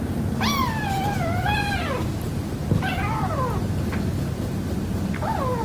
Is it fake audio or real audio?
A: real